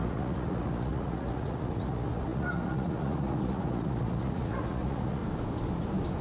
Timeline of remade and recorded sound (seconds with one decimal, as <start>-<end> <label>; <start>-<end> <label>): 0.0-5.2 remade; 5.2-6.2 recorded